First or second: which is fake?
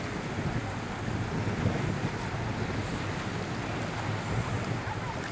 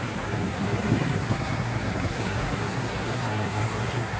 second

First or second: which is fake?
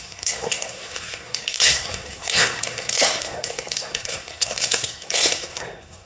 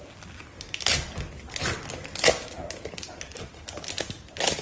first